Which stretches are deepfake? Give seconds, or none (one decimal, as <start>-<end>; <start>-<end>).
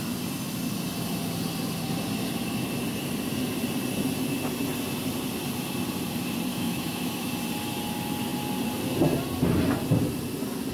6.5-7.3